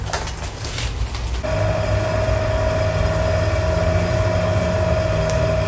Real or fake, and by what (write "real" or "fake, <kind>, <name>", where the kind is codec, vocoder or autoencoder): real